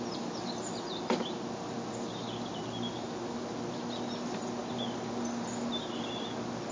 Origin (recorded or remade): recorded